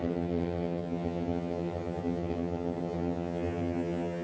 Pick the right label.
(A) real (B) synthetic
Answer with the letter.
B